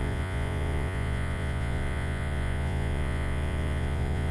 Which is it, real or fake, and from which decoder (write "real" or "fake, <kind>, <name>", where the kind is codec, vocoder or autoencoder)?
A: fake, vocoder, Vocos